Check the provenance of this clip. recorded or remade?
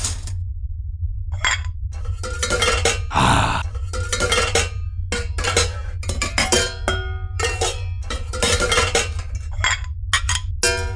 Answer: recorded